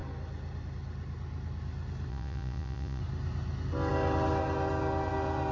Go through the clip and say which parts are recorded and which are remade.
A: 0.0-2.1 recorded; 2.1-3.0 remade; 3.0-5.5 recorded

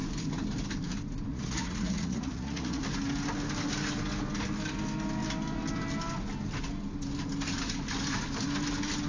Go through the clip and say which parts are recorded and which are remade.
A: 0.0-1.3 recorded; 1.3-2.8 remade; 2.8-9.1 recorded

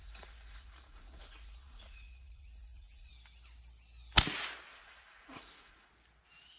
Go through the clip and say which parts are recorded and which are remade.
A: 0.0-3.1 remade; 3.1-4.7 recorded; 4.7-5.9 remade; 5.9-6.6 recorded

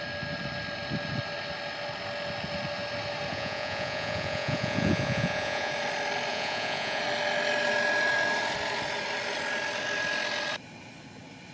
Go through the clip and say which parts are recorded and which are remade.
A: 0.0-3.3 recorded; 3.3-5.7 remade; 5.7-6.3 recorded; 6.3-7.0 remade; 7.0-11.5 recorded

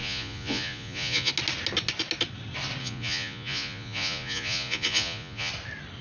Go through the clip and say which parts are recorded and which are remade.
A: 0.0-1.3 remade; 1.3-2.8 recorded; 2.8-5.5 remade; 5.5-6.0 recorded